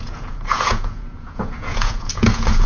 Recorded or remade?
remade